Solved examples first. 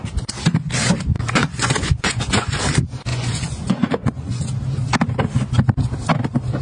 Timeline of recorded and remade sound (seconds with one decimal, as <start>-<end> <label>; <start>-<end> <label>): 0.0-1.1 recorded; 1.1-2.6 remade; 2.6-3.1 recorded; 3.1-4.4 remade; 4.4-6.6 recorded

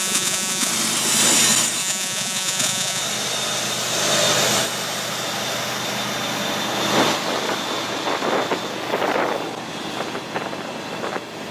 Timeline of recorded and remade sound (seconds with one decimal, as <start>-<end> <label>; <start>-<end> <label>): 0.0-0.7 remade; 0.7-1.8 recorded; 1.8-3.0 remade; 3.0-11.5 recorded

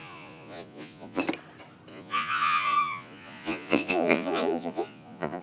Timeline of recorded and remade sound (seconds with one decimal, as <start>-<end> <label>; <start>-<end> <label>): 0.0-1.2 remade; 1.2-1.9 recorded; 1.9-5.4 remade

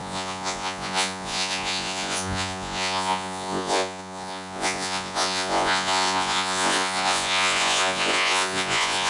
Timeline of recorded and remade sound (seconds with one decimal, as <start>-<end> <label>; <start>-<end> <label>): 0.0-9.1 remade